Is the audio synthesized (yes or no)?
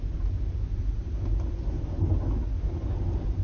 no